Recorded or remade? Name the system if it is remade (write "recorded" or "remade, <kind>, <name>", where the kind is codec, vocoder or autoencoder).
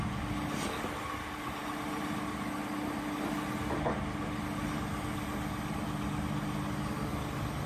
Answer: recorded